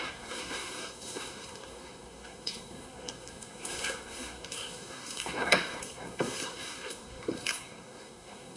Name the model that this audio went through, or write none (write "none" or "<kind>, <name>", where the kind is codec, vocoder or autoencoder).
codec, SNAC